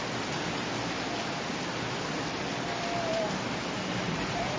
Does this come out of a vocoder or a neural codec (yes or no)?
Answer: no